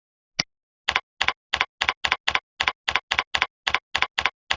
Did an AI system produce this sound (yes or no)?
no